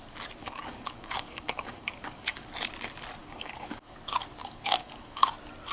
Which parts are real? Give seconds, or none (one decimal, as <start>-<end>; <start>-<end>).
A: 0.0-0.4; 2.5-3.2; 4.0-4.4; 5.2-5.7